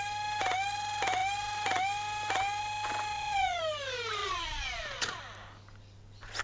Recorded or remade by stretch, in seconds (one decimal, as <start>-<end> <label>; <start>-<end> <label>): 0.0-3.1 recorded; 3.1-3.6 remade; 3.6-4.2 recorded; 4.2-5.2 remade; 5.2-6.4 recorded